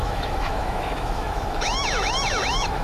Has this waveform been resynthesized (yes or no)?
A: yes